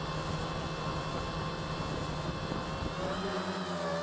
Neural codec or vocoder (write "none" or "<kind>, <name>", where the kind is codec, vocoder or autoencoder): none